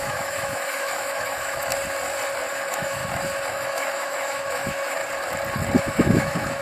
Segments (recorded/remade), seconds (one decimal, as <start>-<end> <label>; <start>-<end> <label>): 0.0-1.7 remade; 1.7-2.5 recorded; 2.5-3.0 remade; 3.0-3.5 recorded; 3.5-5.0 remade; 5.0-5.8 recorded; 5.8-6.6 remade